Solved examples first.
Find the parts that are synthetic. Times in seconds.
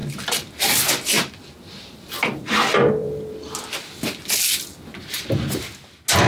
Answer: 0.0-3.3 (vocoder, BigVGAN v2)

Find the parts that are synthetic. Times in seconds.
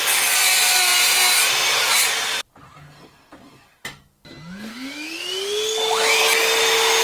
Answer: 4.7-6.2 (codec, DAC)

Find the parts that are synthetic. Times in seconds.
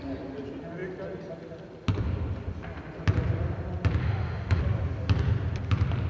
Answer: 4.0-4.6 (autoencoder, DAC-VAE)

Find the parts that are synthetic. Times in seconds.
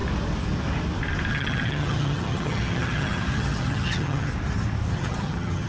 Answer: 1.3-4.3 (vocoder, HiFi-GAN); 4.9-5.7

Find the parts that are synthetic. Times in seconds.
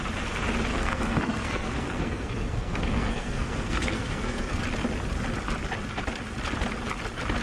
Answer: 0.7-4.6 (codec, SNAC)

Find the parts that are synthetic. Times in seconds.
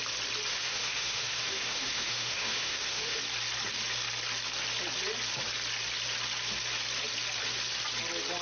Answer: 0.5-3.2 (autoencoder, DAC-VAE)